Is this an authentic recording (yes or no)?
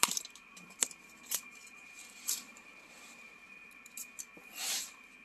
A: no